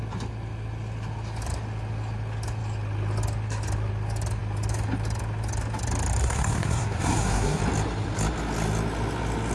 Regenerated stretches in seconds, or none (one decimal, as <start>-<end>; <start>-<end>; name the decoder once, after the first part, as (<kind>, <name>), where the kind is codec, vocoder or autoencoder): 6.2-7.6 (codec, SNAC)